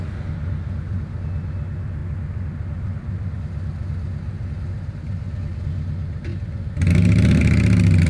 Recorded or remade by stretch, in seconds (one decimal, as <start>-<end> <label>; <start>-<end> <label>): 0.0-8.1 recorded